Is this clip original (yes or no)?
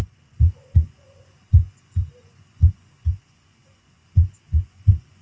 no